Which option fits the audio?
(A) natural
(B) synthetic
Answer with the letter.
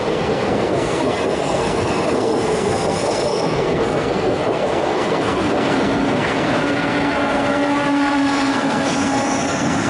B